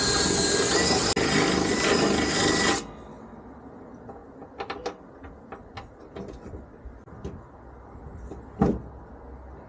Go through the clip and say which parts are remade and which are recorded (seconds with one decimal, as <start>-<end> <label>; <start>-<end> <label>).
0.0-9.7 recorded

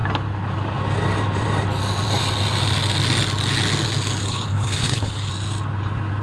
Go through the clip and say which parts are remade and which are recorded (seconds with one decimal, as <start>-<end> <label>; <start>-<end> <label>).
0.0-4.2 recorded; 4.2-5.3 remade; 5.3-6.2 recorded